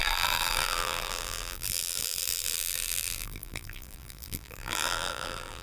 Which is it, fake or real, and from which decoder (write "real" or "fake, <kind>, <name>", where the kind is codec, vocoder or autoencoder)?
fake, vocoder, BigVGAN v2